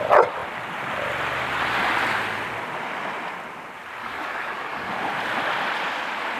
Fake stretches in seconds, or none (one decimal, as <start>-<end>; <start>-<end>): 4.0-4.9